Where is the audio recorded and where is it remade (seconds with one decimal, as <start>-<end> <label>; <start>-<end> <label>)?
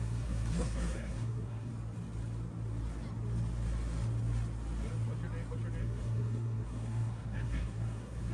0.0-1.7 remade; 1.7-5.8 recorded; 5.8-8.3 remade